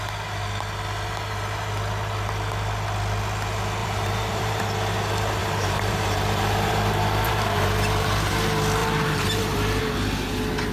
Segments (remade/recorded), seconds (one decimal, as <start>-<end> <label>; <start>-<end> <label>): 0.0-3.8 recorded; 3.8-4.6 remade; 4.6-5.4 recorded; 5.4-8.3 remade; 8.3-8.8 recorded; 8.8-9.8 remade; 9.8-10.7 recorded